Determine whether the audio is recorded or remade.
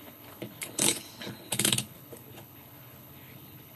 remade